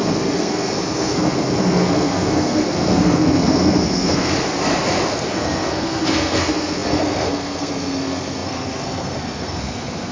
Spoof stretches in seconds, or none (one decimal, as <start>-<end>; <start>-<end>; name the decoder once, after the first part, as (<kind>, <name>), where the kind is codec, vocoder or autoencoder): 0.0-4.3 (codec, SNAC); 5.1-10.1